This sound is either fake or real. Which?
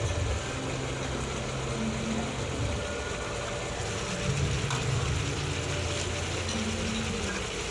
real